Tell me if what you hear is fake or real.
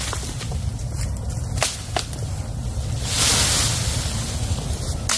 real